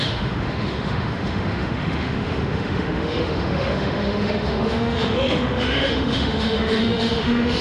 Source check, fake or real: fake